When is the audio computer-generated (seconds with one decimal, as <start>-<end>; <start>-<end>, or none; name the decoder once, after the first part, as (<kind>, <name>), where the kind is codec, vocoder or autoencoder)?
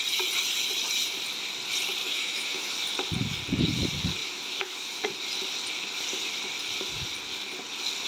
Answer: 2.0-2.7 (autoencoder, DAC-VAE); 4.2-5.0